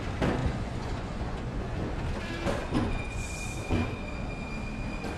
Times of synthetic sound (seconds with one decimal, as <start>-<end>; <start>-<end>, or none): 0.4-1.9; 2.6-3.4